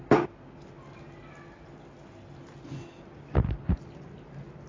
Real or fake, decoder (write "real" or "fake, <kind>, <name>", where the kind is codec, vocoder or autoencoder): real